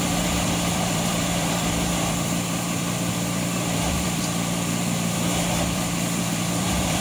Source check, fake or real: fake